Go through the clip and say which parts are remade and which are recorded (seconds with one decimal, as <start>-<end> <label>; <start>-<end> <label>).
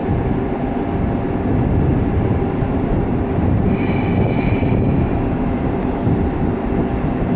0.0-0.7 remade; 0.7-1.9 recorded; 1.9-4.7 remade; 4.7-7.4 recorded